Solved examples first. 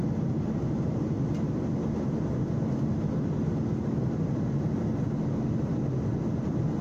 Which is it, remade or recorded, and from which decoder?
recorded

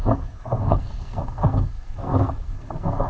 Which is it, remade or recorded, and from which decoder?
remade, codec, SNAC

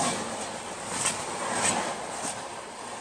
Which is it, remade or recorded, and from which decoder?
remade, vocoder, BigVGAN v2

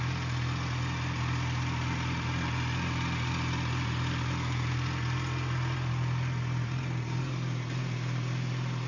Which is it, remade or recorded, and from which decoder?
recorded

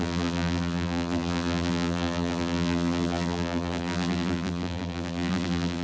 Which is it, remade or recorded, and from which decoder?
remade, vocoder, BigVGAN v2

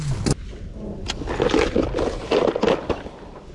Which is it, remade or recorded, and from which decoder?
recorded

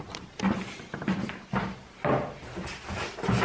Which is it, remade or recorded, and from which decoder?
recorded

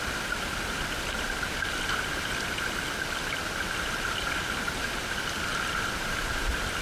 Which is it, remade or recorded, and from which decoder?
recorded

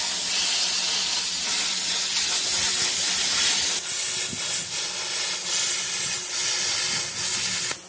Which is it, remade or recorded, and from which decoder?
recorded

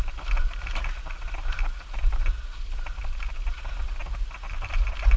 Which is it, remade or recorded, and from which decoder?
recorded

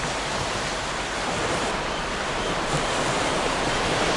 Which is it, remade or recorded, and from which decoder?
recorded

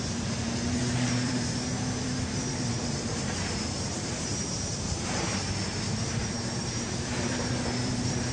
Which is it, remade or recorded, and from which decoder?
remade, vocoder, BigVGAN v2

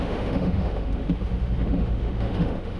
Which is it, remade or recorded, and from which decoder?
remade, autoencoder, DAC-VAE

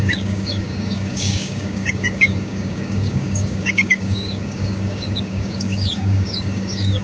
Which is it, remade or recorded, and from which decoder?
remade, codec, DAC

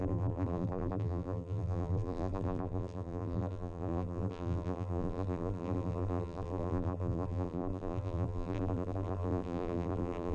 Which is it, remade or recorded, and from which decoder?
remade, vocoder, BigVGAN v2